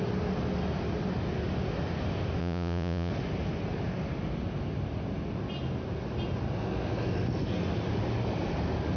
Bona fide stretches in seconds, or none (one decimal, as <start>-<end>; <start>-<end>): 0.0-2.4; 3.1-9.0

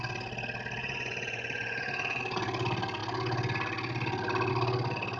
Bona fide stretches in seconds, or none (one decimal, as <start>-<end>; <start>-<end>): 0.0-0.8; 2.2-5.2

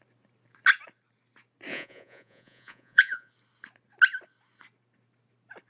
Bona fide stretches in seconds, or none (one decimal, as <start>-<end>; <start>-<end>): 0.0-1.7; 3.3-5.7

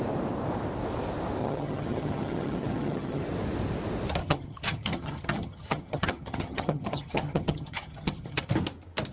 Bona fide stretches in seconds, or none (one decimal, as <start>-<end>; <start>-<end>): 0.0-1.4; 3.2-4.2; 8.5-9.1

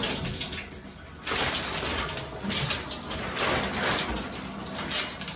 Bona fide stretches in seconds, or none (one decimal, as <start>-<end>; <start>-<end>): 0.0-5.4

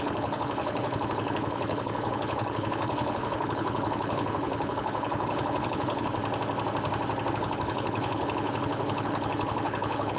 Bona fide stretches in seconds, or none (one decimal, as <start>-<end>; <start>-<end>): 6.2-7.3

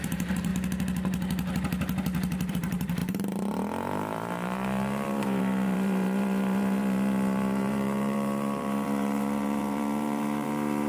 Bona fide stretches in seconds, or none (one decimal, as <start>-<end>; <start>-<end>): 0.5-2.5